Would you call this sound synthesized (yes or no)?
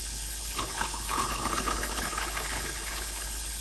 yes